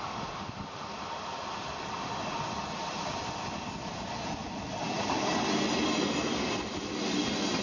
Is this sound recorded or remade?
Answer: recorded